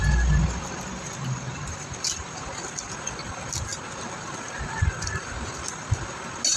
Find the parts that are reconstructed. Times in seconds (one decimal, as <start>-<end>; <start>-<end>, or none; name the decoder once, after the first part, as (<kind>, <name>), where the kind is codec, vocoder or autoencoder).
0.9-2.4 (vocoder, BigVGAN v2)

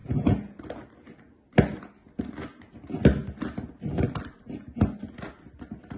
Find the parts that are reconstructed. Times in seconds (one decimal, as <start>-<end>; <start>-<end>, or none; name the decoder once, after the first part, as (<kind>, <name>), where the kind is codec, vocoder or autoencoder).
0.0-0.6 (vocoder, Vocos)

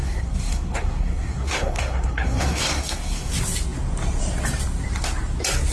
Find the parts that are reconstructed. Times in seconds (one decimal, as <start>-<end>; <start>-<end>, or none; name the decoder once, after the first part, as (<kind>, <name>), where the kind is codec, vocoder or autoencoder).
0.0-3.3 (codec, SNAC)

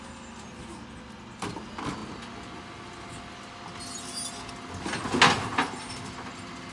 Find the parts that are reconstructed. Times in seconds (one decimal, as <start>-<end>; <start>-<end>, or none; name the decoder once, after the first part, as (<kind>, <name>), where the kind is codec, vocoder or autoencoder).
none

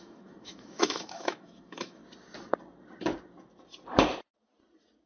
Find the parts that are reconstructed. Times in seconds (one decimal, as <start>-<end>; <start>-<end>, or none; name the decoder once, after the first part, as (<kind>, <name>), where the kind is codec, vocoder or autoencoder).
0.0-2.0 (autoencoder, DAC-VAE)

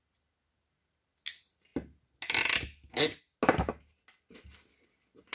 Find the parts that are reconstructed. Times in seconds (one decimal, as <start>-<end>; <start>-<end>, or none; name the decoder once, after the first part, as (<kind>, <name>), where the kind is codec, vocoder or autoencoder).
none

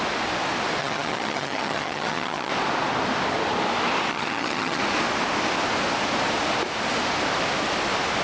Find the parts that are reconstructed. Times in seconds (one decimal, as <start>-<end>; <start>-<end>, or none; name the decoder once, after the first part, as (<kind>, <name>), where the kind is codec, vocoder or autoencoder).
0.8-2.5 (vocoder, HiFi-GAN); 4.1-4.8

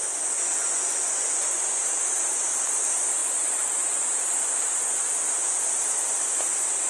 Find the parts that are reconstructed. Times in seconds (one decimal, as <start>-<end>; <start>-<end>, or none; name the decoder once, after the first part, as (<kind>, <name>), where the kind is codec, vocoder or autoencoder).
0.0-1.8 (vocoder, Vocos)